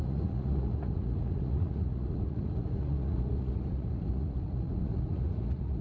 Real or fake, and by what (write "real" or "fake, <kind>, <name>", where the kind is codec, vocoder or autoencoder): fake, vocoder, Vocos